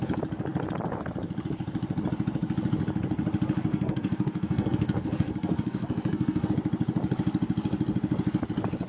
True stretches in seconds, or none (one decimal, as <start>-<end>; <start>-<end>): 0.0-3.7; 6.5-8.9